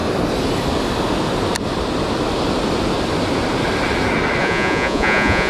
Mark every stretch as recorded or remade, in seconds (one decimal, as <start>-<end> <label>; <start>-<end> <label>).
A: 0.0-4.4 recorded; 4.4-5.5 remade